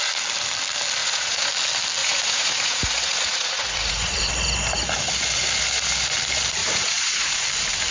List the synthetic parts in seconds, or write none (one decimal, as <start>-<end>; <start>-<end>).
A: 1.0-1.5; 2.0-4.3; 6.6-7.4